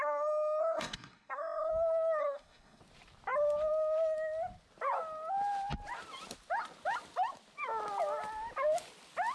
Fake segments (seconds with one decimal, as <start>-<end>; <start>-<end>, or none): 0.6-1.7; 2.2-2.8

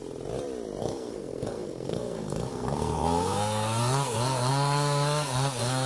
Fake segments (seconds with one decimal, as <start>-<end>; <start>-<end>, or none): 0.8-5.9

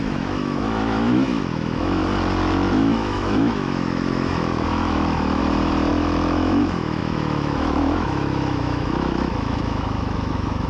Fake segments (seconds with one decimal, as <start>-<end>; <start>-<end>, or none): 0.0-2.0; 2.7-5.4; 5.9-10.7

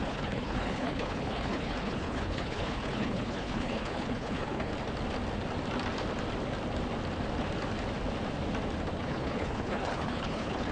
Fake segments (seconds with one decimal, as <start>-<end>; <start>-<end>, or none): 0.0-4.7; 9.0-10.7

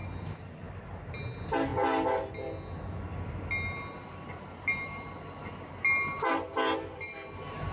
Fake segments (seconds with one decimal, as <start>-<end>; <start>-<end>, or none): none

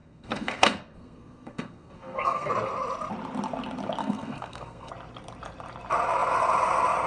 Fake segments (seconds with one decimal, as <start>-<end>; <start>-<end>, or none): 0.0-2.5; 4.0-4.9

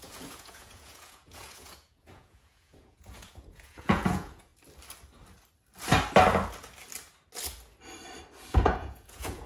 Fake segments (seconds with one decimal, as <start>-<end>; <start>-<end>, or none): 0.0-4.5; 8.5-9.5